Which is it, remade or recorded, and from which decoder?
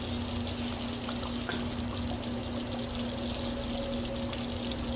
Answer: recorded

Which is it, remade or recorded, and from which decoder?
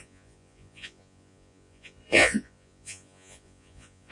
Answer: remade, vocoder, Vocos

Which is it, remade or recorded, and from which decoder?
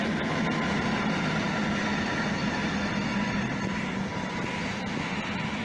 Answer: recorded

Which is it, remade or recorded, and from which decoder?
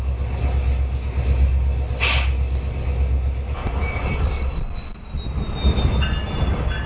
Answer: recorded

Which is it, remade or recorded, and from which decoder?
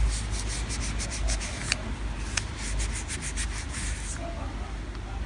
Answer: recorded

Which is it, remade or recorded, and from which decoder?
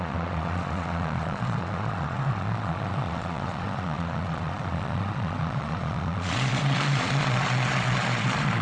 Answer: remade, vocoder, Vocos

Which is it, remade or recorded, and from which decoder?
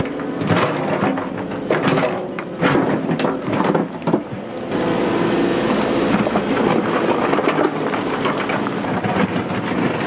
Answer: recorded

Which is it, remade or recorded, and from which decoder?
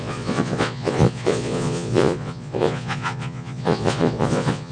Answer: remade, vocoder, Vocos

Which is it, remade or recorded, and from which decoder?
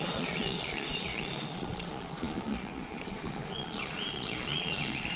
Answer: remade, vocoder, Vocos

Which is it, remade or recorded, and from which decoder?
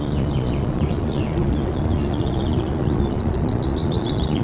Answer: remade, vocoder, Vocos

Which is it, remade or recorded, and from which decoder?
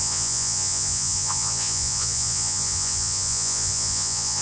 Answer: remade, vocoder, Vocos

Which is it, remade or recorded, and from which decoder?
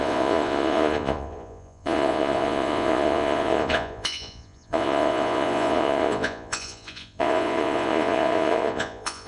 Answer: remade, vocoder, Vocos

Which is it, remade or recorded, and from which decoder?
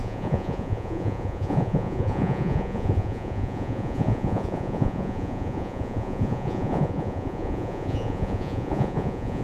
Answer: remade, vocoder, Vocos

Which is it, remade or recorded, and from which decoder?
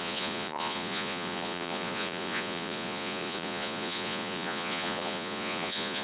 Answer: remade, vocoder, Vocos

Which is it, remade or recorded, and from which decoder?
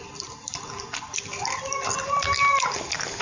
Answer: recorded